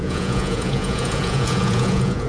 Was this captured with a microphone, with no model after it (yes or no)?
no